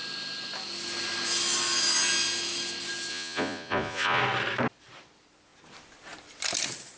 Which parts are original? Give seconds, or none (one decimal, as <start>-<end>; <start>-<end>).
0.0-3.1; 4.2-7.0